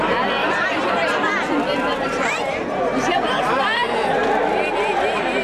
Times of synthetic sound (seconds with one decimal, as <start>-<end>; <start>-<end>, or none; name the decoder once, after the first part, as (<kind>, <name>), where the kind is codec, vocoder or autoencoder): 0.4-2.8 (vocoder, BigVGAN v2)